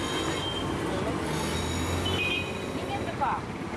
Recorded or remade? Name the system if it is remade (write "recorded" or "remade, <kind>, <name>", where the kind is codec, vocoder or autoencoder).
recorded